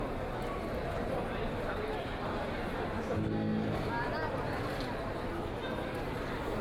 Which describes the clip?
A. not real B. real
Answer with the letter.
B